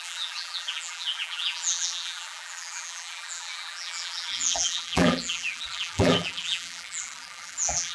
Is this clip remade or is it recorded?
remade